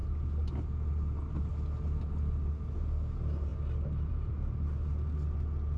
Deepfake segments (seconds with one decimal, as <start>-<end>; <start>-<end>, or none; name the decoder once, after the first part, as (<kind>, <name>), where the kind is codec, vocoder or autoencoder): none